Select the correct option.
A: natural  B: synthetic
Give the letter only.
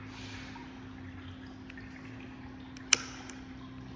A